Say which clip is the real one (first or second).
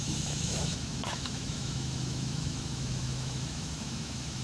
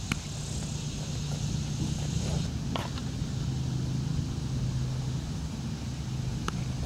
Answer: second